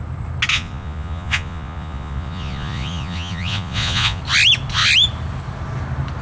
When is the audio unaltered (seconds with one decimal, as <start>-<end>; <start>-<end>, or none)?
0.0-0.5; 4.2-6.2